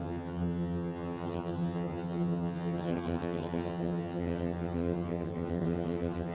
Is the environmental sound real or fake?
fake